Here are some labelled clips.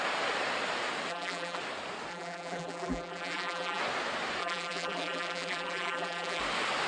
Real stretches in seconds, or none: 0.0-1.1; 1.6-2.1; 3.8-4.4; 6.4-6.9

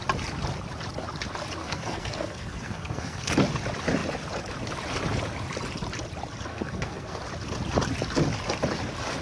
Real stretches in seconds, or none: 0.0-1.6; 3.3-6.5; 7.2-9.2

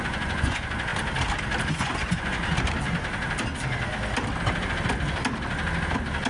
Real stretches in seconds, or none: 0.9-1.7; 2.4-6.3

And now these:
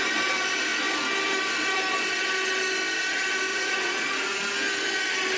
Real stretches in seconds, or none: 0.0-3.5; 4.4-5.4

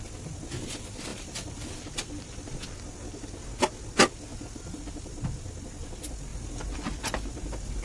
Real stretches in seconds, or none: 0.0-1.1; 2.8-4.3; 5.7-6.3